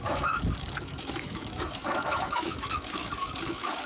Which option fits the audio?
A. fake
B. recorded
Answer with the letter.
A